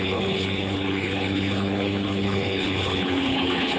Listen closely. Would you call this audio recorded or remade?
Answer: remade